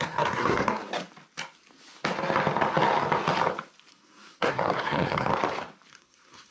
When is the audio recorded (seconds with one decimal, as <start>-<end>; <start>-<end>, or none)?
0.9-3.9; 5.3-5.9